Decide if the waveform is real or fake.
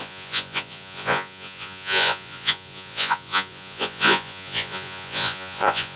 fake